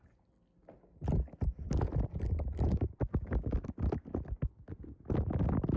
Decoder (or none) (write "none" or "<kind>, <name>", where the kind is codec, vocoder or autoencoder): none